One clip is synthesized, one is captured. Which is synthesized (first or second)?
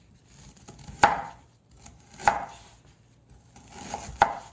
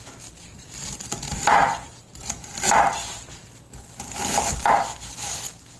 second